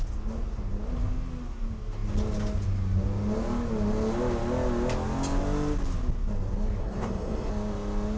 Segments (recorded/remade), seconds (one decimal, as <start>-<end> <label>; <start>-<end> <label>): 0.0-6.8 recorded; 6.8-7.5 remade; 7.5-8.2 recorded